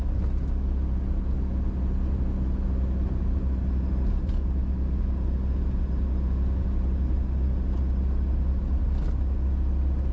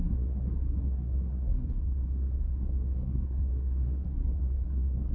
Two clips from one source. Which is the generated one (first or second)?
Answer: second